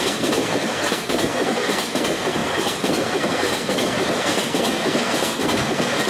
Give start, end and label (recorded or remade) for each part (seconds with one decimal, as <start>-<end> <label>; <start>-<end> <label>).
0.0-6.1 remade